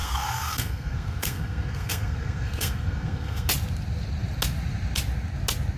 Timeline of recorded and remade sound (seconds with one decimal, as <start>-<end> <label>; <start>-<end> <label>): 0.0-3.5 remade; 3.5-5.8 recorded